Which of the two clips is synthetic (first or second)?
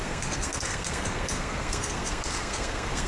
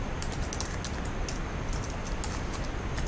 first